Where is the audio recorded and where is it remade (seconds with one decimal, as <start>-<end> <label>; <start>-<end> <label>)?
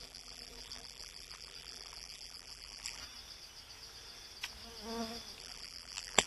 0.0-3.0 remade; 3.0-5.4 recorded; 5.4-6.3 remade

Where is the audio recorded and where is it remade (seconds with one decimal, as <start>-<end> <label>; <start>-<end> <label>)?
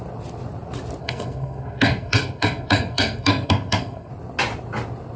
0.0-1.0 recorded; 1.0-4.1 remade; 4.1-5.2 recorded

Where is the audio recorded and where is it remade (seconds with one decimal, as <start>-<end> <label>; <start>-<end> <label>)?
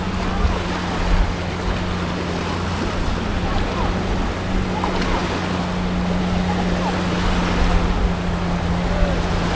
0.0-9.6 recorded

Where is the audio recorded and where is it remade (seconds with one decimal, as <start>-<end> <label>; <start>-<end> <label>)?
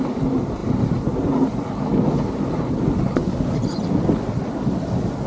0.0-5.3 recorded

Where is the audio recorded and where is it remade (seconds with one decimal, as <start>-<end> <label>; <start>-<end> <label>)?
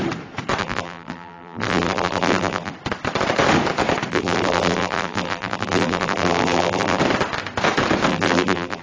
0.0-0.6 recorded; 0.6-2.7 remade; 2.7-4.1 recorded; 4.1-7.0 remade; 7.0-8.1 recorded; 8.1-8.8 remade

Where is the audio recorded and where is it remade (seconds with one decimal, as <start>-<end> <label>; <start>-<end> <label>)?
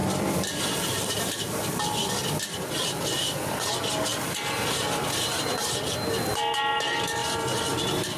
0.0-3.5 remade; 3.5-4.1 recorded; 4.1-4.7 remade; 4.7-7.2 recorded; 7.2-8.2 remade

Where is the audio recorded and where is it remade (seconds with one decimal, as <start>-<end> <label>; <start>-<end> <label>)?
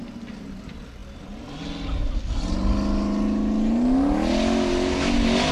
0.0-5.5 recorded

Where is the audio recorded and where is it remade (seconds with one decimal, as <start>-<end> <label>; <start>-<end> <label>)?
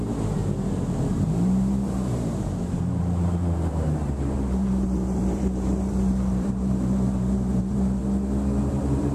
0.0-0.4 remade; 0.4-1.1 recorded; 1.1-8.0 remade; 8.0-8.7 recorded; 8.7-9.1 remade